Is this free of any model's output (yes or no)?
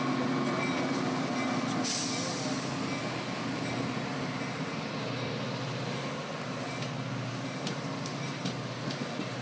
yes